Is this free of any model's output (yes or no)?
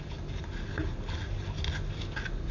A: yes